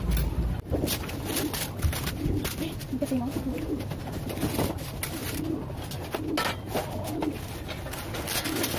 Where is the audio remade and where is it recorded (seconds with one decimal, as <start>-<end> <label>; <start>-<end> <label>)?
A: 0.0-8.8 recorded